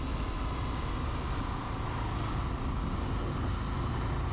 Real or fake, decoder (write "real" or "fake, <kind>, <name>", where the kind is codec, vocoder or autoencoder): real